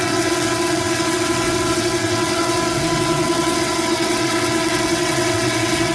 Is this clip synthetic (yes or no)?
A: yes